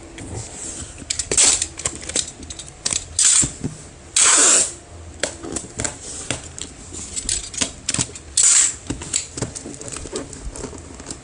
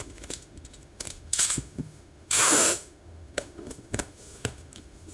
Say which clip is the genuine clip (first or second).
first